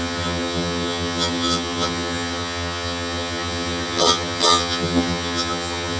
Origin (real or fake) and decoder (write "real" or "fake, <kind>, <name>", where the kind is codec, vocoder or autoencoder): fake, vocoder, HiFi-GAN